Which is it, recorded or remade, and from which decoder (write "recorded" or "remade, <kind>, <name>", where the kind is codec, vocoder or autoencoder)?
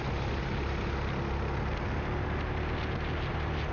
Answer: recorded